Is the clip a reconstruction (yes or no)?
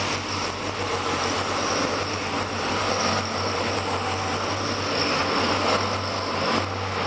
no